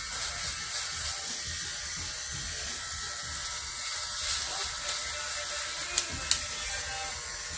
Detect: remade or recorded recorded